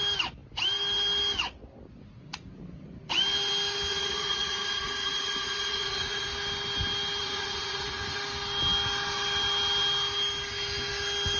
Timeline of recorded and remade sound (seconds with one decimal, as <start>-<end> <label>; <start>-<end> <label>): 0.0-3.9 recorded; 3.9-6.2 remade; 6.2-7.2 recorded; 7.2-8.2 remade; 8.2-11.4 recorded